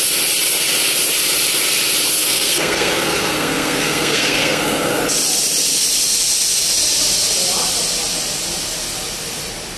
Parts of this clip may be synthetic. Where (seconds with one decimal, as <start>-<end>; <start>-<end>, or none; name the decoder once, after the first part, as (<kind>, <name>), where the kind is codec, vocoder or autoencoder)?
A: 2.2-5.0 (codec, SNAC)

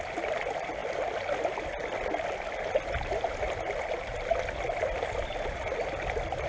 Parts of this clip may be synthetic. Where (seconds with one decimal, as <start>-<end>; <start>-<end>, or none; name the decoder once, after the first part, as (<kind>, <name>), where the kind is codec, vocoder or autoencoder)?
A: none

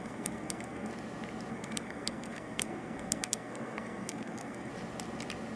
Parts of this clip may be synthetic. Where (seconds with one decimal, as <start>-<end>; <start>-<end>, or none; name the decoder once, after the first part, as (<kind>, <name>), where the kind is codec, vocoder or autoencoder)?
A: 0.0-0.9 (codec, SNAC); 1.5-4.7

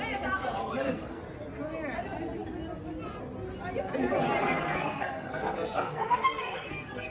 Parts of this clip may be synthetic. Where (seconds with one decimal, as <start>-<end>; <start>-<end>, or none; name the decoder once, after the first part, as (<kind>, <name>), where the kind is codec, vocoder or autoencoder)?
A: 0.6-1.2 (codec, SNAC); 4.4-7.1

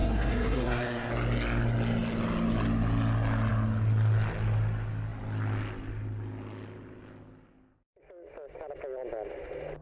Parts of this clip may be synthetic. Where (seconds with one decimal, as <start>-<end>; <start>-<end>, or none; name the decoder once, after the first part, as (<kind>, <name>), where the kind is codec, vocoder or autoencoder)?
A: 0.0-1.1 (codec, SNAC)

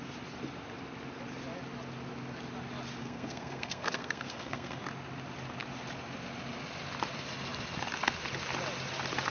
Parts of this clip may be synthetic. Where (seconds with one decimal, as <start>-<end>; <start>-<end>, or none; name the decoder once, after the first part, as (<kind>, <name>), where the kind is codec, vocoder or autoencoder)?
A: 3.0-4.8 (codec, SNAC)

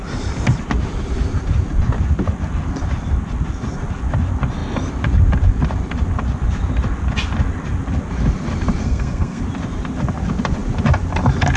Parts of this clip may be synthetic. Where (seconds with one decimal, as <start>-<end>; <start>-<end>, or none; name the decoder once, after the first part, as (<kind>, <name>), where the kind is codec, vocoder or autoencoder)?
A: 8.8-9.4 (codec, SNAC)